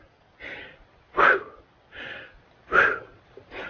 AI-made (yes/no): no